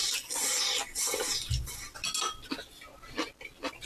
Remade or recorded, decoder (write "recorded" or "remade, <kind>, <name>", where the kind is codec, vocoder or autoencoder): recorded